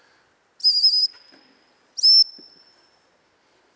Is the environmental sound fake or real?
real